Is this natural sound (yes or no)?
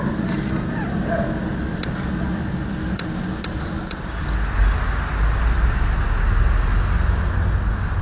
yes